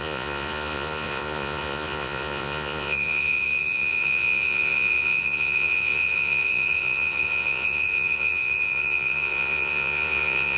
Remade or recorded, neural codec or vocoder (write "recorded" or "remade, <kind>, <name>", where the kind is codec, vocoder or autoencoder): remade, vocoder, Vocos